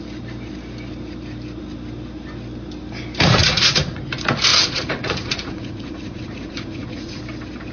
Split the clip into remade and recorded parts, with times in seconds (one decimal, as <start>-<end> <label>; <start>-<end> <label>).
0.0-3.4 recorded; 3.4-4.0 remade; 4.0-4.5 recorded; 4.5-7.2 remade; 7.2-7.7 recorded